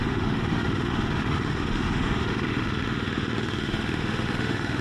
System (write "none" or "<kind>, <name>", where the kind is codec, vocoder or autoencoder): autoencoder, DAC-VAE